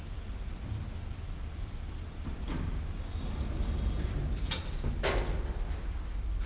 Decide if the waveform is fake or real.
real